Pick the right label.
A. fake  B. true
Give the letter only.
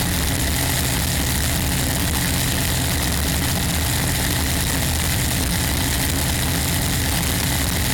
B